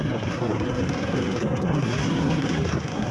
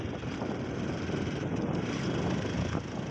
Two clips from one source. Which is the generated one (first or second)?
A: first